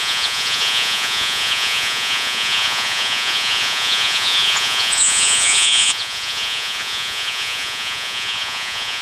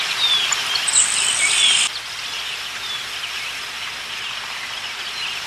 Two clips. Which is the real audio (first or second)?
second